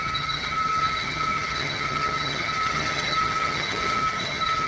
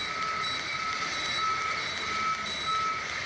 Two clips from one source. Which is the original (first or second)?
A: second